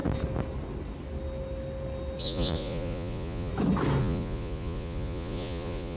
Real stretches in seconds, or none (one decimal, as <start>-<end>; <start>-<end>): 0.0-2.2; 3.5-4.0